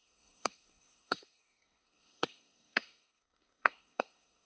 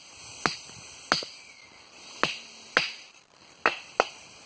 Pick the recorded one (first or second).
second